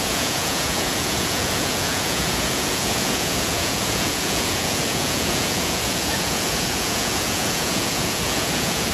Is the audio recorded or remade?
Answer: remade